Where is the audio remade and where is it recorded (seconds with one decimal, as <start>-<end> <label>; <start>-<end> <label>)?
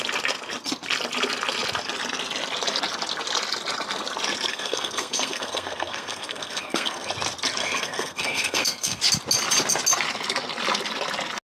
0.0-4.5 recorded; 4.5-7.1 remade; 7.1-7.6 recorded; 7.6-9.0 remade; 9.0-11.5 recorded